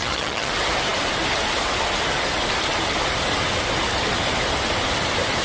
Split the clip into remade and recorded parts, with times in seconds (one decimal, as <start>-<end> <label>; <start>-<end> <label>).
0.0-0.5 remade; 0.5-5.4 recorded